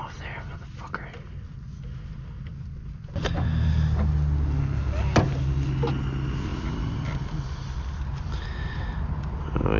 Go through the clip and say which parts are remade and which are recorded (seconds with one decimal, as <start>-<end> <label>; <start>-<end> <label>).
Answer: 0.0-9.8 recorded